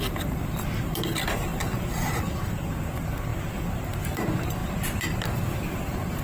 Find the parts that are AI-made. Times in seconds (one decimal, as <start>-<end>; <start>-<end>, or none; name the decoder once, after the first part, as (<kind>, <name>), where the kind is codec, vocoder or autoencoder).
none